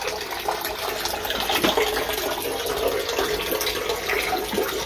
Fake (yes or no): no